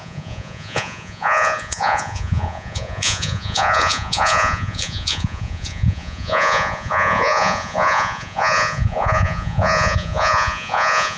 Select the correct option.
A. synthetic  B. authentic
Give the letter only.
A